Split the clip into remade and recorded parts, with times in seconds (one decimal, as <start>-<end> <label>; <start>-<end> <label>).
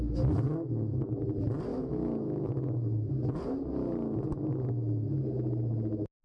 0.0-1.7 recorded; 1.7-3.1 remade; 3.1-4.5 recorded; 4.5-5.2 remade; 5.2-6.2 recorded